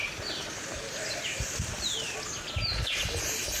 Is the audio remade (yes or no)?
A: no